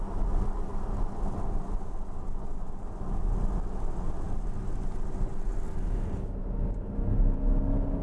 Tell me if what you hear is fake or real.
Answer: real